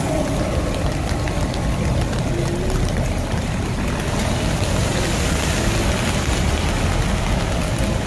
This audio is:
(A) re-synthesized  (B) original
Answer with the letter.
B